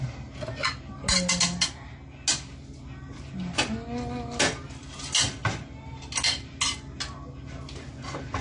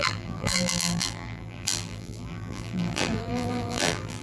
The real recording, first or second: first